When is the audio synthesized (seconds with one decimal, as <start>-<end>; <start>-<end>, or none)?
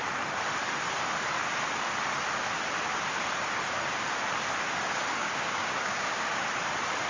5.2-6.4